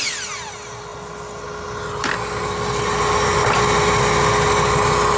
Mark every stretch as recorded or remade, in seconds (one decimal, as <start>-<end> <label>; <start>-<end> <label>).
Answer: 0.0-5.2 recorded